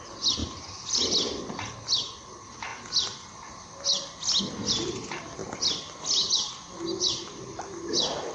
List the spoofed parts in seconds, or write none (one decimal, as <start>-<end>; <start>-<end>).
0.4-1.5